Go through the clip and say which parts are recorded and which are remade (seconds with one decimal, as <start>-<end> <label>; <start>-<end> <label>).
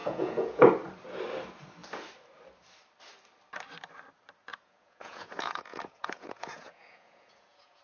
0.0-0.7 remade; 0.7-4.5 recorded; 4.5-7.8 remade